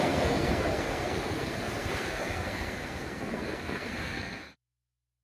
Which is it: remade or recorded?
remade